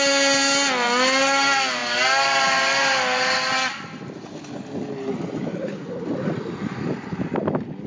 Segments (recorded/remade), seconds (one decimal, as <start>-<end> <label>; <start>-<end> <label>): 0.0-7.9 recorded